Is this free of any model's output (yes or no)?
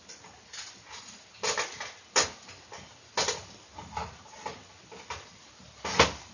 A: yes